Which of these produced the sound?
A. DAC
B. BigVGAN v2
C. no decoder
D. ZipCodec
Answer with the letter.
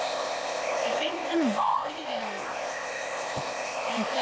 D